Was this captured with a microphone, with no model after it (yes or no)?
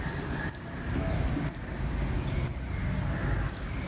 yes